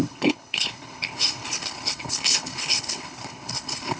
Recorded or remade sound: remade